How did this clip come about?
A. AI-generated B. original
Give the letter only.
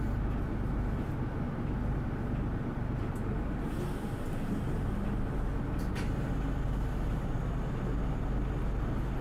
B